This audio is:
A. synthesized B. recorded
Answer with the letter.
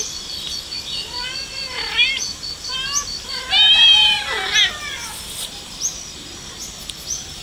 B